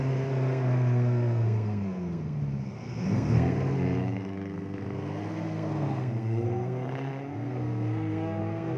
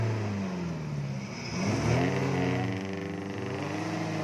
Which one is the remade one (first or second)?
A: first